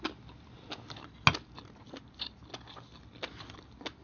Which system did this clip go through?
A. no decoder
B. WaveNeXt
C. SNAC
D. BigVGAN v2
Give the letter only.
A